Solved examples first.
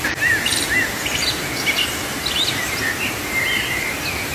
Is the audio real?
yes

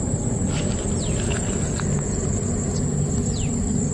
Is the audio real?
yes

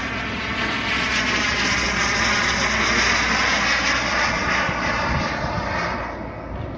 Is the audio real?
yes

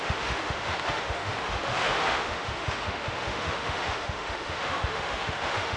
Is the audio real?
no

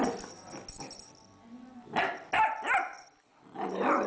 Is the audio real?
yes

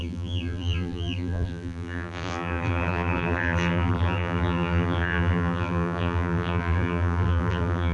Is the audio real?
no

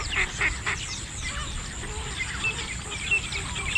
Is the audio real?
yes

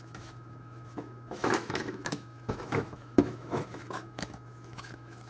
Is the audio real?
no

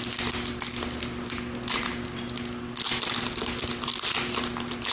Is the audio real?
yes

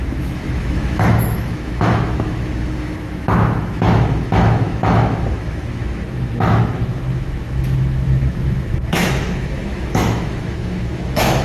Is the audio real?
no